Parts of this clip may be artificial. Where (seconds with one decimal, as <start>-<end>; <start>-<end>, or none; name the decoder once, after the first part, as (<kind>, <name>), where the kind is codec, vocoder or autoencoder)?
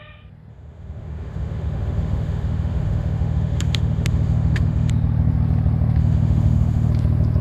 0.5-4.9 (autoencoder, DAC-VAE); 6.0-6.9